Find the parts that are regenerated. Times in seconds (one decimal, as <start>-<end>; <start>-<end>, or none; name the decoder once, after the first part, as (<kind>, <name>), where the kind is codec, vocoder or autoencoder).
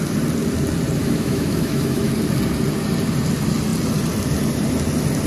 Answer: 1.0-2.1 (autoencoder, DAC-VAE)